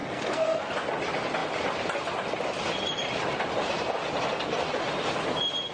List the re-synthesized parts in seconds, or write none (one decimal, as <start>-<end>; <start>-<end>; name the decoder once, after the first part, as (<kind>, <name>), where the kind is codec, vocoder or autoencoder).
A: 0.0-0.7 (codec, SNAC)